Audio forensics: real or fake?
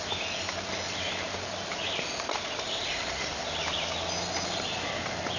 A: real